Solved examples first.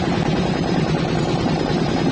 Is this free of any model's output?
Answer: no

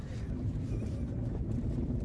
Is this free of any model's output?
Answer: no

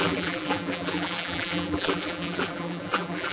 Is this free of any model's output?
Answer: no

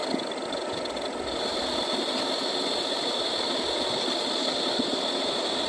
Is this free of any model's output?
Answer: yes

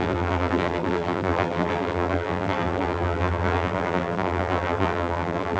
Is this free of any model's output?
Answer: no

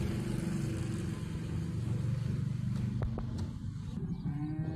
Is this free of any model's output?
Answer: yes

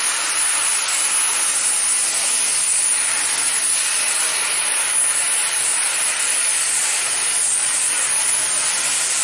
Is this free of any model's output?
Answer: yes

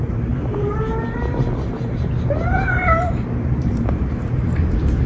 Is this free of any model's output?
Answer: no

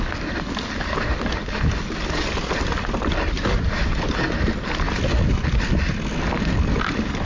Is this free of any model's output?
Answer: yes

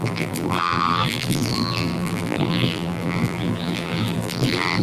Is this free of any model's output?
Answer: no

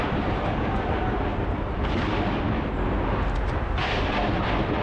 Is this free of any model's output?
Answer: no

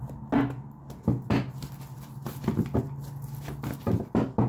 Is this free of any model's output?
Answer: yes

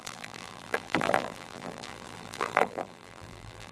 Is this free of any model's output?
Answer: no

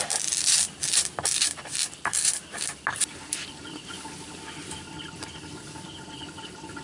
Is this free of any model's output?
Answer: no